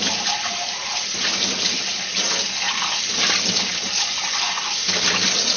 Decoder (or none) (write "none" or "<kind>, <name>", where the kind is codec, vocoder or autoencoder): none